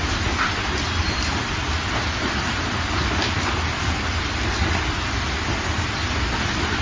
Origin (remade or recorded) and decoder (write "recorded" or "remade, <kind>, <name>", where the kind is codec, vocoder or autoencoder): recorded